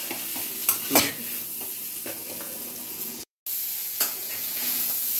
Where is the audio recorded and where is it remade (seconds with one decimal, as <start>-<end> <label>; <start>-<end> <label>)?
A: 0.0-2.2 recorded; 2.2-3.4 remade; 3.4-3.8 recorded; 3.8-5.2 remade